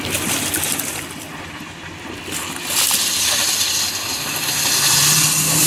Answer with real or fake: real